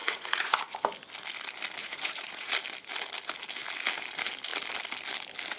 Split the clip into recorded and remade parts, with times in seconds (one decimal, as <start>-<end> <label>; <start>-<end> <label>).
0.0-0.8 remade; 0.8-1.8 recorded; 1.8-2.5 remade; 2.5-5.6 recorded